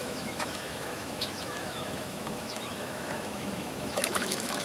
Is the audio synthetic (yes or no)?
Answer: yes